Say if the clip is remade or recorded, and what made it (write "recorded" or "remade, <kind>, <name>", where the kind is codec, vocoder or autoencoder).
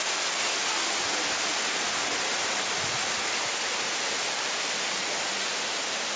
recorded